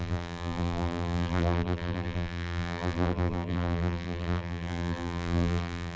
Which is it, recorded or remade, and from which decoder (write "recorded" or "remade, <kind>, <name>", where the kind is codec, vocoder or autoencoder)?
remade, vocoder, BigVGAN v2